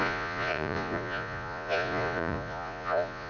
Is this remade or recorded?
remade